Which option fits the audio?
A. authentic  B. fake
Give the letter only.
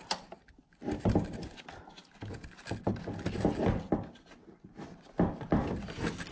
A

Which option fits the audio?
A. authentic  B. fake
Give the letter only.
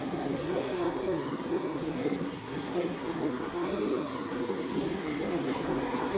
B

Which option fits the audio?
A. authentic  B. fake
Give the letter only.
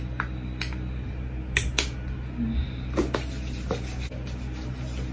A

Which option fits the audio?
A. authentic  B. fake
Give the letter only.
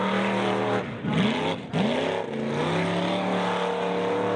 A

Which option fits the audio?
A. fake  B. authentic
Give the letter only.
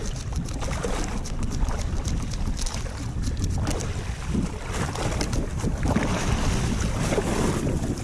B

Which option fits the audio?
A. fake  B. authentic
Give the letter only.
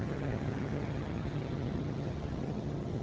A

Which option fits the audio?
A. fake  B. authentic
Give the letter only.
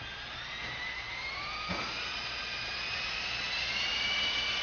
A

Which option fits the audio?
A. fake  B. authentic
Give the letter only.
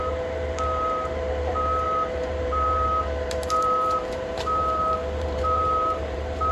A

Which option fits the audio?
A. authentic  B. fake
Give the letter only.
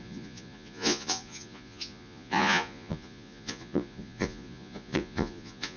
B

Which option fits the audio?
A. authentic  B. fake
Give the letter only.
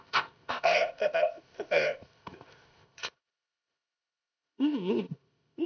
B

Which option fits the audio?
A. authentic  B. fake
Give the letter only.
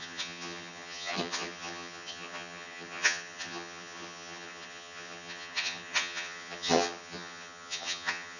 B